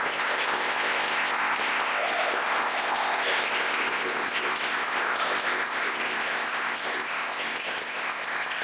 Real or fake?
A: fake